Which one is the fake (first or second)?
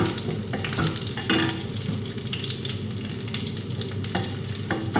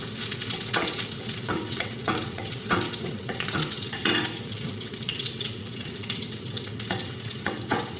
second